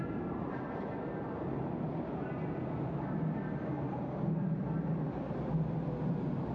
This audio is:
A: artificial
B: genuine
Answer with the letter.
B